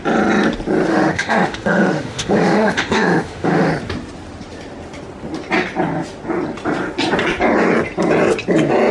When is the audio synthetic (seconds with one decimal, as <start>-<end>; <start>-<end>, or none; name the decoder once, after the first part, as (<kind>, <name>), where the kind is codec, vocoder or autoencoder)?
0.9-3.7 (autoencoder, DAC-VAE)